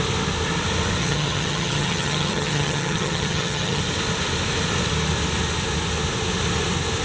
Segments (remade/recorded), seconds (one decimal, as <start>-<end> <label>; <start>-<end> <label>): 0.0-1.0 recorded; 1.0-3.8 remade; 3.8-7.0 recorded